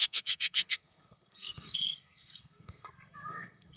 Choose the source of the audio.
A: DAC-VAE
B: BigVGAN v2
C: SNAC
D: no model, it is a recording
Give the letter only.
C